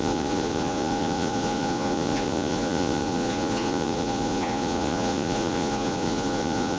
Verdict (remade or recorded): remade